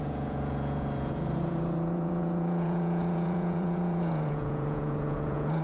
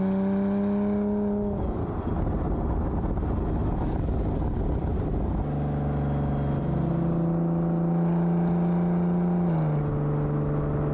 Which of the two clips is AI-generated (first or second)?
first